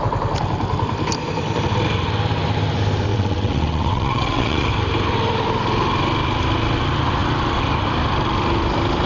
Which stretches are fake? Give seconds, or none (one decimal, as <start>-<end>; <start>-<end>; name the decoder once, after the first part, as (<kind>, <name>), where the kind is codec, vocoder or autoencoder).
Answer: 3.1-4.7 (vocoder, WaveNeXt)